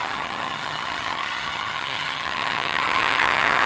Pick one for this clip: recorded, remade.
remade